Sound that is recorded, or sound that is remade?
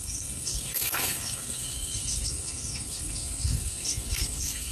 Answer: remade